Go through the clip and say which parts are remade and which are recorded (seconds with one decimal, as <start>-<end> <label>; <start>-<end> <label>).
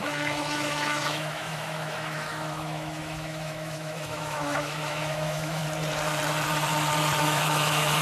0.0-5.6 remade; 5.6-7.2 recorded; 7.2-8.0 remade